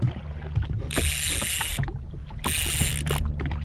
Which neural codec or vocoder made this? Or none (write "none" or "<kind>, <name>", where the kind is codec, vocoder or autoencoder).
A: none